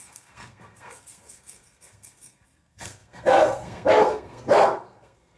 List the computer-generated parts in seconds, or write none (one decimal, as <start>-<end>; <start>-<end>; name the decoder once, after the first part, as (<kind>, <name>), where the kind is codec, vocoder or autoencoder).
0.0-5.4 (codec, SNAC)